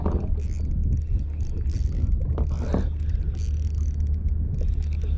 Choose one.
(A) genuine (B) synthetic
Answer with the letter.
A